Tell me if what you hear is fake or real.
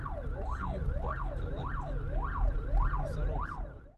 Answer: real